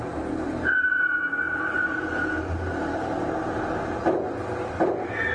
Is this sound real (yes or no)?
yes